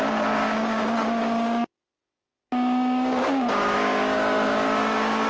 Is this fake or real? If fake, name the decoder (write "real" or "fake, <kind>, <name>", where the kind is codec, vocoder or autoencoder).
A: fake, codec, DAC